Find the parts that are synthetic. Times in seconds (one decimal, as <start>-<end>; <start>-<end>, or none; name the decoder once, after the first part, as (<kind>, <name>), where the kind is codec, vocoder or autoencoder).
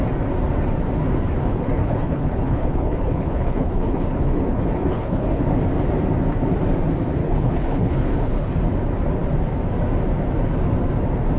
1.4-5.4 (codec, HILCodec); 7.2-8.5